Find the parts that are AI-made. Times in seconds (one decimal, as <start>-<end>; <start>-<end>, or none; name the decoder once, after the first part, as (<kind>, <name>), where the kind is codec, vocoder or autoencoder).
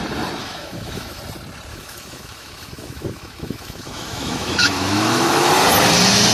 0.4-1.2 (autoencoder, DAC-VAE); 1.7-5.5